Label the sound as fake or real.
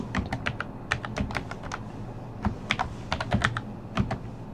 real